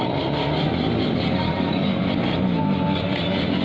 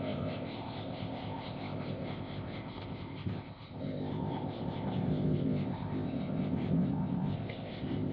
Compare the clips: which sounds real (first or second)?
first